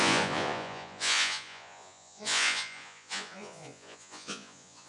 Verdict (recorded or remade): remade